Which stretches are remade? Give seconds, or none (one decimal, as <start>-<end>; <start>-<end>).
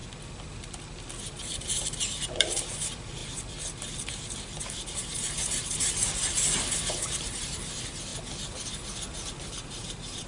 1.5-3.2; 4.7-8.1; 9.3-10.3